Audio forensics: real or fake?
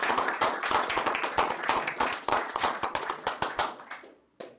fake